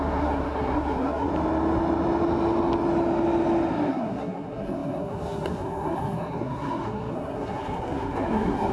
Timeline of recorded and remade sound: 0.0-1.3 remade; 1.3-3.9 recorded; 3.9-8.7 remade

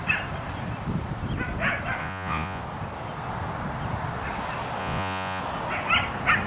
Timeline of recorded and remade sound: 0.0-2.0 recorded; 2.0-2.6 remade; 2.6-4.8 recorded; 4.8-5.4 remade; 5.4-6.5 recorded

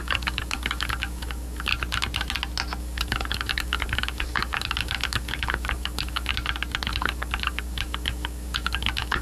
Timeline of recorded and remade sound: 0.0-1.7 remade; 1.7-2.8 recorded; 2.8-6.3 remade; 6.3-6.9 recorded; 6.9-9.2 remade

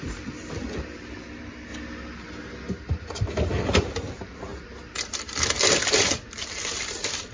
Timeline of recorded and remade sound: 0.0-1.7 remade; 1.7-2.7 recorded; 2.7-4.5 remade; 4.5-5.0 recorded; 5.0-7.3 remade

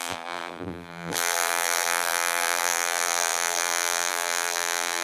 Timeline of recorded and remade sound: 0.0-5.0 remade